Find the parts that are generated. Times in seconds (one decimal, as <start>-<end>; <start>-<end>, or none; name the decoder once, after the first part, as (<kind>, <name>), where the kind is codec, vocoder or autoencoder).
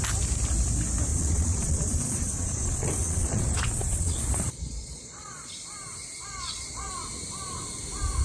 1.1-5.5 (vocoder, Vocos); 6.2-6.9